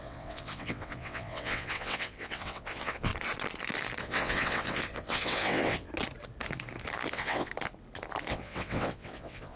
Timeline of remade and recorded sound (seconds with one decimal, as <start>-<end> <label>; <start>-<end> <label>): 0.0-3.1 remade; 3.1-4.0 recorded; 4.0-5.9 remade; 5.9-7.1 recorded; 7.1-7.5 remade; 7.5-8.3 recorded; 8.3-9.6 remade